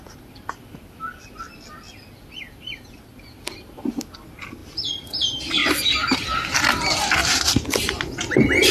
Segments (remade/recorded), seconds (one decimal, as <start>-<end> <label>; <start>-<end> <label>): 0.0-4.6 recorded; 4.6-5.1 remade; 5.1-7.2 recorded; 7.2-8.2 remade; 8.2-8.7 recorded

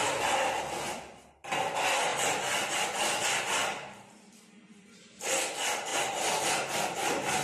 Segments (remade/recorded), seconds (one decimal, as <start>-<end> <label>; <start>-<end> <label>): 0.0-2.1 recorded; 2.1-2.7 remade; 2.7-3.6 recorded; 3.6-5.5 remade; 5.5-7.4 recorded

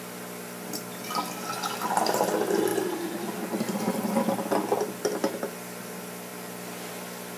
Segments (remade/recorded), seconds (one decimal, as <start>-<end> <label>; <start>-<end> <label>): 0.0-7.4 recorded

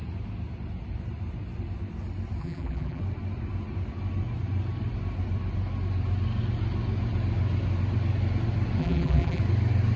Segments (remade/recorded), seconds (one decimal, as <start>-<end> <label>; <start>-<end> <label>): 0.0-2.4 recorded; 2.4-3.0 remade; 3.0-8.8 recorded; 8.8-9.4 remade; 9.4-10.0 recorded

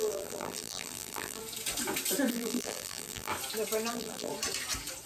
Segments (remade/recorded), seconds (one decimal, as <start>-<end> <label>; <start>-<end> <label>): 0.0-1.4 remade; 1.4-2.3 recorded; 2.3-3.3 remade; 3.3-3.9 recorded; 3.9-4.3 remade; 4.3-5.1 recorded

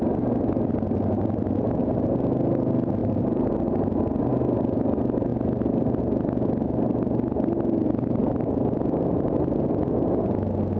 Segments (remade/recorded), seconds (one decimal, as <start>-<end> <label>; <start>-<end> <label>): 0.0-3.0 recorded; 3.0-4.3 remade; 4.3-10.8 recorded

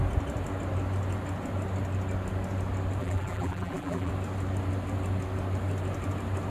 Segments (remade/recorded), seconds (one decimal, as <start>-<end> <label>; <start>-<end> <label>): 0.0-3.0 recorded; 3.0-4.1 remade; 4.1-6.5 recorded

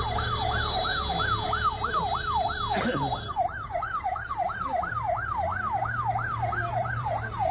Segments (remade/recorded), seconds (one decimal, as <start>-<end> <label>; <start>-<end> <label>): 0.0-0.9 remade; 0.9-1.7 recorded; 1.7-5.5 remade; 5.5-6.7 recorded; 6.7-7.5 remade